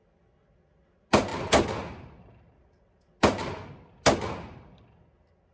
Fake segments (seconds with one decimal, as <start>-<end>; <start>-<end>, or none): none